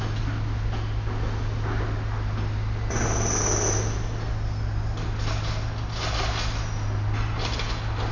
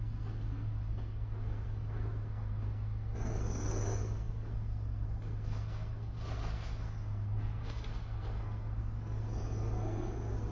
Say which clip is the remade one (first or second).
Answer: second